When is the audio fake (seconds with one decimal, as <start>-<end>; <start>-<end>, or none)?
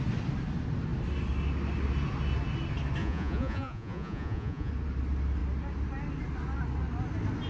3.0-4.7